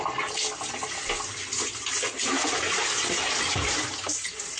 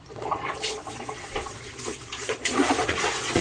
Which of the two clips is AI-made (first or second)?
second